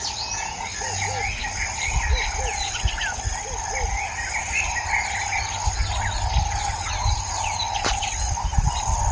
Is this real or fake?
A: real